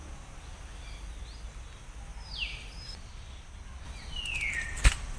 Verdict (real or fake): real